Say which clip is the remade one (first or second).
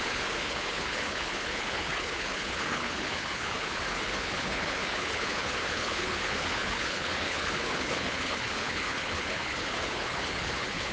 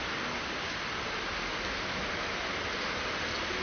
first